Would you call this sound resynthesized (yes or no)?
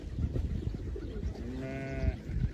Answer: no